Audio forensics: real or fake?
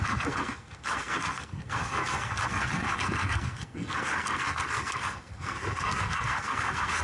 fake